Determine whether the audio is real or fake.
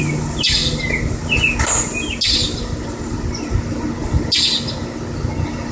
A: real